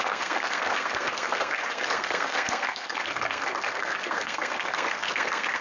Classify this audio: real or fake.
fake